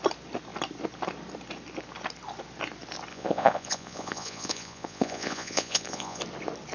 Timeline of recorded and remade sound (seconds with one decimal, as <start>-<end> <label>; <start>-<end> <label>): 0.0-3.1 recorded; 3.1-6.2 remade; 6.2-6.7 recorded